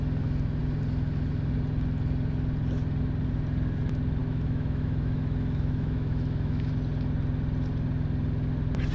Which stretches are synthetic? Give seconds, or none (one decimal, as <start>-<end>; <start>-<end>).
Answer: 4.2-6.7